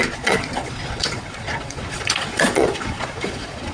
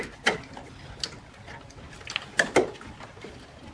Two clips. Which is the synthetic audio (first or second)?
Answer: first